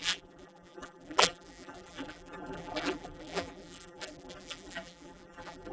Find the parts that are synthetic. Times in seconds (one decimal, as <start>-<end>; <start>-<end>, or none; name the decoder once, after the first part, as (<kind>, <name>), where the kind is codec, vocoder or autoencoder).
0.0-5.7 (vocoder, BigVGAN v2)